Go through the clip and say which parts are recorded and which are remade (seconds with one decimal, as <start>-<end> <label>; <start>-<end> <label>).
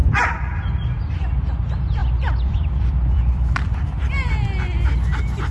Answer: 0.0-0.6 remade; 0.6-2.0 recorded; 2.0-4.3 remade; 4.3-5.5 recorded